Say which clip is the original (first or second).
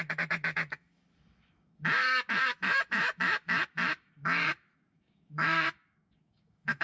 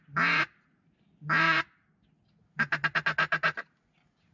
second